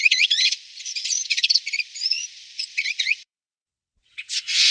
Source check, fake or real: fake